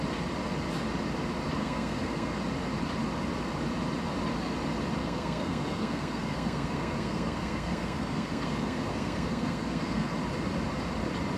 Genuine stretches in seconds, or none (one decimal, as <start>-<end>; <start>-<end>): 0.0-1.6; 2.4-5.0; 10.1-11.4